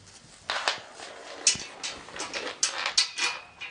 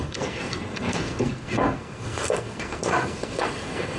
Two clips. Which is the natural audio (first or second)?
first